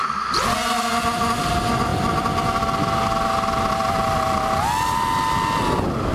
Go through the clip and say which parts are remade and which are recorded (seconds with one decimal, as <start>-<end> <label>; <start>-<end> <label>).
0.0-6.1 recorded

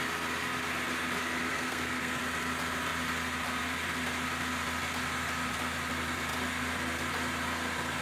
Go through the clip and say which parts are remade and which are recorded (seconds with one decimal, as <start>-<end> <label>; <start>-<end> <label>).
0.0-1.5 recorded; 1.5-2.2 remade; 2.2-8.0 recorded

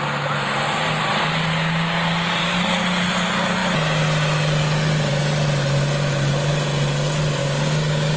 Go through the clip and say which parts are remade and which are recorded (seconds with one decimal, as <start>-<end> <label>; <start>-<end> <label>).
0.0-7.4 recorded; 7.4-8.2 remade

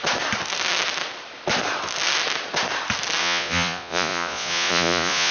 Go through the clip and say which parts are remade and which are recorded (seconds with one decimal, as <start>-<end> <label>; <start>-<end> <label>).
0.0-3.2 recorded; 3.2-5.3 remade

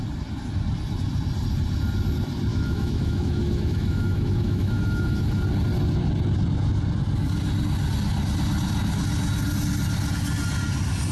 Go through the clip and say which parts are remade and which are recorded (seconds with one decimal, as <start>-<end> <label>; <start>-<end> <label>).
0.0-2.5 recorded; 2.5-5.4 remade; 5.4-11.1 recorded

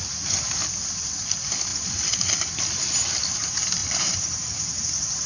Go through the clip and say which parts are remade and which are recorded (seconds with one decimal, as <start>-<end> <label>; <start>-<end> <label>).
0.0-3.8 recorded; 3.8-4.8 remade; 4.8-5.3 recorded

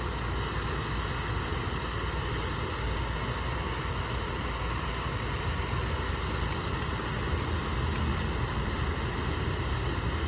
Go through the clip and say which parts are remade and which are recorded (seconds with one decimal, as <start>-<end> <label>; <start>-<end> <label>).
0.0-8.1 recorded; 8.1-9.2 remade; 9.2-10.3 recorded